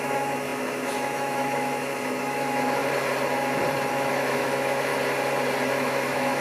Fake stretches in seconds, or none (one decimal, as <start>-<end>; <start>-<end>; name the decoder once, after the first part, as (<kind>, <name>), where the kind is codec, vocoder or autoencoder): 0.0-2.8 (autoencoder, DAC-VAE); 3.9-4.9; 5.7-6.4